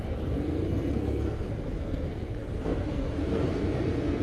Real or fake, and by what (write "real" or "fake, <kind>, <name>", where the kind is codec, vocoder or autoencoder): fake, codec, SNAC